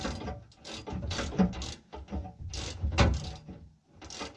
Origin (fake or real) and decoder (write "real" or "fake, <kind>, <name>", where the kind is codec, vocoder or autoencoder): real